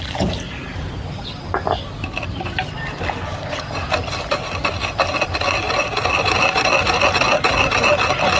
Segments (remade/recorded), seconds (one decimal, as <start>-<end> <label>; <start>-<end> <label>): 0.0-8.4 recorded